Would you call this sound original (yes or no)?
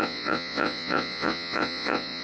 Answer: no